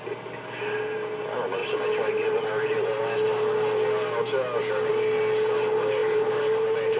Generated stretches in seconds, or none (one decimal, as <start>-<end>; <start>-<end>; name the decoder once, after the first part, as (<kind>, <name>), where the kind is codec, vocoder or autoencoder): none